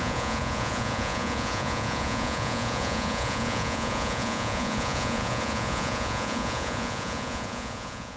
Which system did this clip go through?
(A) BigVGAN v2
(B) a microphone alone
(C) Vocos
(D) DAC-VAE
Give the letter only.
C